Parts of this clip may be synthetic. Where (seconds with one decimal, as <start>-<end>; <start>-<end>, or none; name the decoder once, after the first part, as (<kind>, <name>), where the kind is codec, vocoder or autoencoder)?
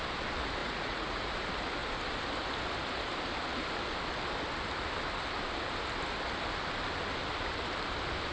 0.6-1.3 (vocoder, Vocos)